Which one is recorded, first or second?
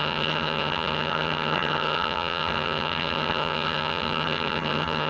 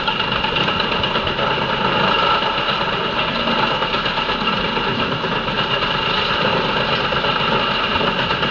second